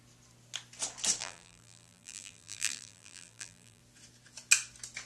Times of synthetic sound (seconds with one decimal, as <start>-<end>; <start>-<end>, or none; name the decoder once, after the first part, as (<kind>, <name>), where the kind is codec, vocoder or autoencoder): 1.2-3.8 (vocoder, BigVGAN v2)